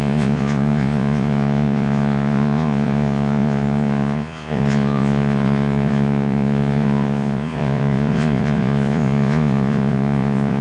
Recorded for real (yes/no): no